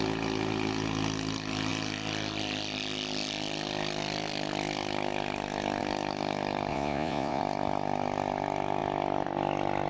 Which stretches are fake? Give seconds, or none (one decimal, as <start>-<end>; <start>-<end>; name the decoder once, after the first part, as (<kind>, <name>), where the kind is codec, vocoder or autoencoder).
6.7-7.4 (vocoder, Vocos)